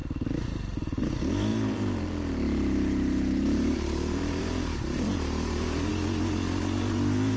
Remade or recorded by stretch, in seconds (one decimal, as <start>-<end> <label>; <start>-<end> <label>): 0.0-1.0 remade; 1.0-1.5 recorded; 1.5-5.9 remade; 5.9-7.4 recorded